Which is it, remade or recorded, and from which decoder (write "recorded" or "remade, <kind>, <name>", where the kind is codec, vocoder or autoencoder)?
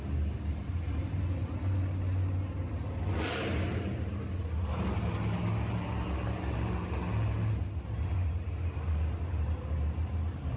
recorded